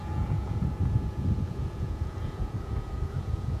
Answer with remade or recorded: remade